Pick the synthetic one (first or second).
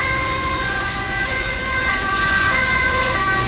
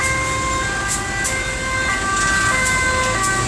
first